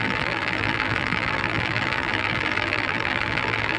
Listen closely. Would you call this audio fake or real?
fake